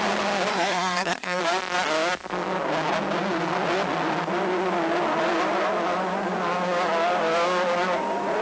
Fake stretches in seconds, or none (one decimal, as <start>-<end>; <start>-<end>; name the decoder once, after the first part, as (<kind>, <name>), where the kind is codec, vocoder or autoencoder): 0.5-1.4 (codec, SNAC)